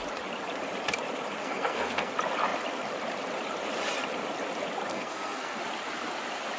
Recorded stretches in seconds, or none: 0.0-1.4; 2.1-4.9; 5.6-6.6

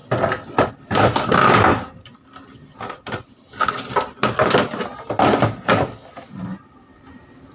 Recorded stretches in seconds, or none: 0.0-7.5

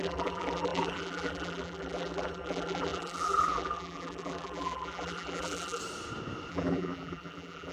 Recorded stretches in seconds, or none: 5.8-6.5